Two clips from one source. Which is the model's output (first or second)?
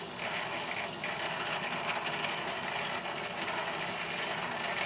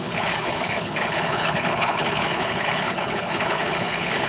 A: second